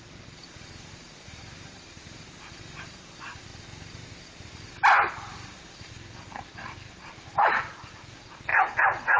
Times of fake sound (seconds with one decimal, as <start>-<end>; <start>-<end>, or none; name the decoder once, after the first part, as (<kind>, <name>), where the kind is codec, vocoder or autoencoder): 0.0-3.5 (vocoder, BigVGAN v2); 5.1-8.5